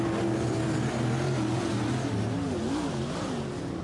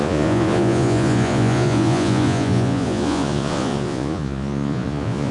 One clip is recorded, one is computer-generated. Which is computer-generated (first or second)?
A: second